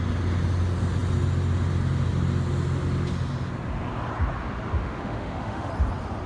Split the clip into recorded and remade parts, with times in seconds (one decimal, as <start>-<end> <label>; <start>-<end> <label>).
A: 0.0-4.8 recorded; 4.8-5.7 remade; 5.7-6.3 recorded